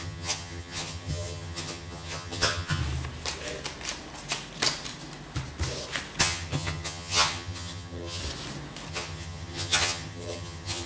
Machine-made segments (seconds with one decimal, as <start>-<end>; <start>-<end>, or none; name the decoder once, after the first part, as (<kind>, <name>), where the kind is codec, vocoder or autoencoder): 0.0-2.8 (vocoder, HiFi-GAN); 6.2-8.2; 8.9-10.9

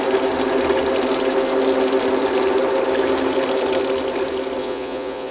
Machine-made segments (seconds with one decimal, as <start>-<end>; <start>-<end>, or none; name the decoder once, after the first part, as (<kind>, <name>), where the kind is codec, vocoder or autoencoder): 4.6-5.3 (vocoder, Vocos)

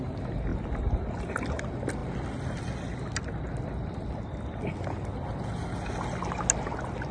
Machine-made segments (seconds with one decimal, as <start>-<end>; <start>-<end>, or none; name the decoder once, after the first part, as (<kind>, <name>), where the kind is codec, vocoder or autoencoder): 0.5-1.2 (vocoder, BigVGAN v2)

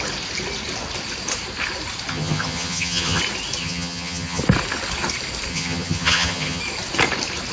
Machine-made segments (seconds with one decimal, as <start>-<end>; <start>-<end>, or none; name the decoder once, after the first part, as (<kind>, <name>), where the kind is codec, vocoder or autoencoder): 2.1-3.2 (vocoder, HiFi-GAN); 3.6-4.4; 5.5-6.6

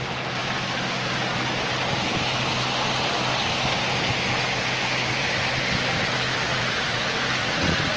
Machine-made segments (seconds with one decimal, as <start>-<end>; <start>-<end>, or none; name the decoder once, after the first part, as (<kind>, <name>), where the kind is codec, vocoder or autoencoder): 6.5-7.0 (vocoder, Vocos); 7.4-8.0